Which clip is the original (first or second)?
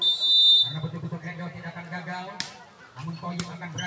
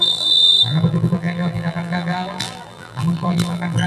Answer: first